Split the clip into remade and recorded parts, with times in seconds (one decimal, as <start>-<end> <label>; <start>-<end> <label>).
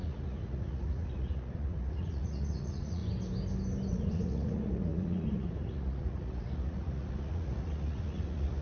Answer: 0.0-3.0 remade; 3.0-3.9 recorded; 3.9-8.6 remade